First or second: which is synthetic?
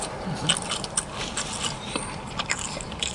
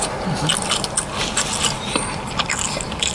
first